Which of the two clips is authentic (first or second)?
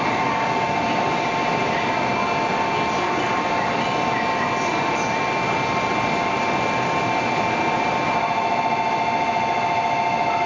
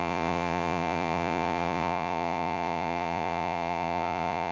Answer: first